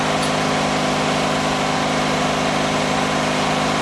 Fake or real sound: real